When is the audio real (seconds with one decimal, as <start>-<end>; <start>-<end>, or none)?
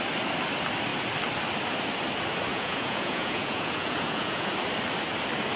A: 0.0-2.5; 4.5-5.6